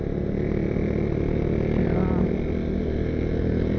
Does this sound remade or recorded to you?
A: recorded